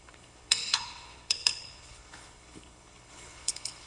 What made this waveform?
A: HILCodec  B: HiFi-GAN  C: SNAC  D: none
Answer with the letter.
A